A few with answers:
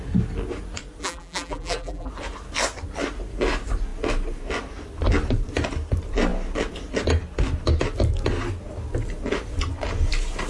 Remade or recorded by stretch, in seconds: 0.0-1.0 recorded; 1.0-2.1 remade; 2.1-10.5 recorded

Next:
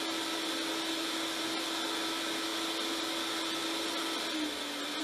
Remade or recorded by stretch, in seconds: 0.0-5.0 recorded